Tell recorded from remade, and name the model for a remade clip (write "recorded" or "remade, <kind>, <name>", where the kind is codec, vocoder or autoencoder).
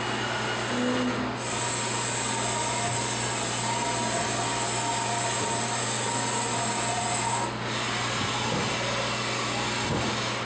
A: recorded